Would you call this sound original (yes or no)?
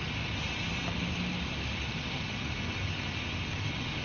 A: yes